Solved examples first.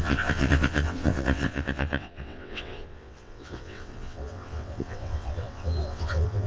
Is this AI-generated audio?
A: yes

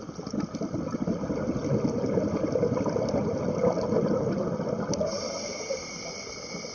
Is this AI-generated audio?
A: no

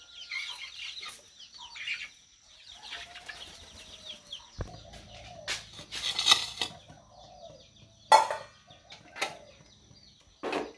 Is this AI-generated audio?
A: no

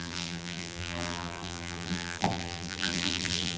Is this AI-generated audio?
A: yes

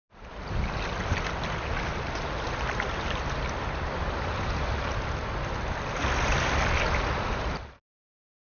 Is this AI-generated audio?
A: no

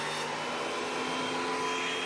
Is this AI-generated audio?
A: no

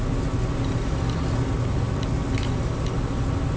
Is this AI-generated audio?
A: no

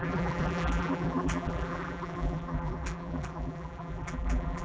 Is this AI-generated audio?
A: yes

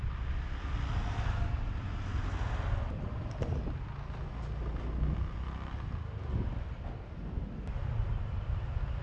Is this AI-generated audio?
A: no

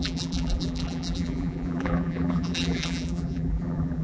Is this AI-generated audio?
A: yes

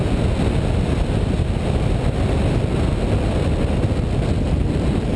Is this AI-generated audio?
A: no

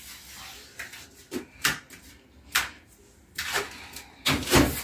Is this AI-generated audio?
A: no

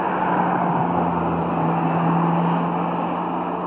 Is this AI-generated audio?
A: no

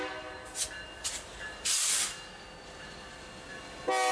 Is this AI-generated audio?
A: no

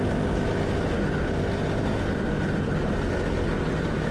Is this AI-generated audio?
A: no